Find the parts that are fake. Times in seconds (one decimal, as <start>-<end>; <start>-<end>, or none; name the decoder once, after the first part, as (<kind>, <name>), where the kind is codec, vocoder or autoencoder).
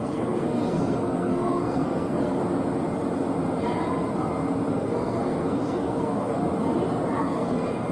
0.0-2.4 (codec, SNAC); 4.7-6.4; 7.2-7.9